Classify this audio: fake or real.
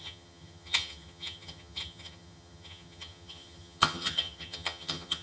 fake